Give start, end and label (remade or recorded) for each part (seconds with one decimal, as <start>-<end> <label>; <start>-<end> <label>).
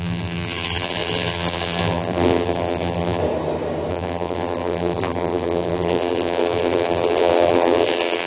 0.0-3.2 remade; 3.2-3.9 recorded; 3.9-8.3 remade